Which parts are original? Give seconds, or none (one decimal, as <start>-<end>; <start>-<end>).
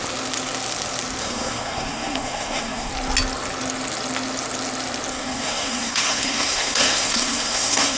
0.0-1.2; 2.9-5.1